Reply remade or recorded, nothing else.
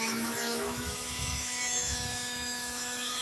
remade